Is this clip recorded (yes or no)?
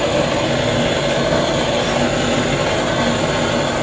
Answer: yes